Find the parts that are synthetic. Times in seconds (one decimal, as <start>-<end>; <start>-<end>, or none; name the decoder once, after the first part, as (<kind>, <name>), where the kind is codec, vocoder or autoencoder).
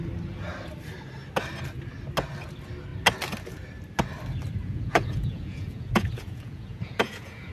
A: 4.6-7.5 (vocoder, Vocos)